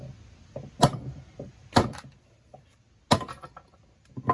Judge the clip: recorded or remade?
recorded